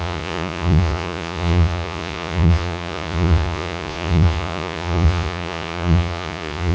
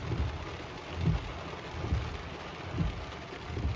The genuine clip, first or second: second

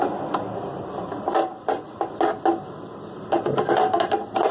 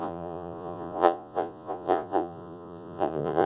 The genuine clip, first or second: first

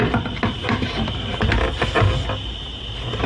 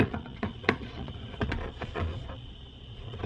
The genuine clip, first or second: first